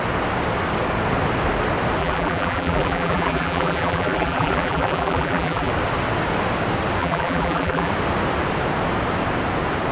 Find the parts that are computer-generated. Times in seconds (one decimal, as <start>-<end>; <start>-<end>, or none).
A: 2.0-5.7; 7.0-7.9